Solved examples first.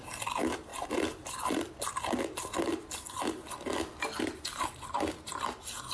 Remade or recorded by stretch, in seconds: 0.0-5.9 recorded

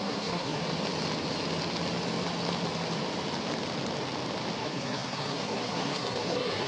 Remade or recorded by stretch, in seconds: 0.0-0.6 remade; 0.6-4.6 recorded; 4.6-6.7 remade

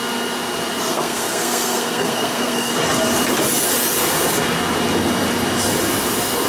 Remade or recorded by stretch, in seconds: 0.0-0.9 recorded; 0.9-2.7 remade; 2.7-6.5 recorded

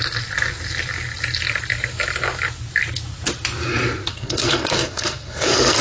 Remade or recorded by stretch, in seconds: 0.0-4.1 recorded; 4.1-5.8 remade